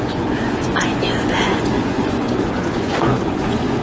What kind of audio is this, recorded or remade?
remade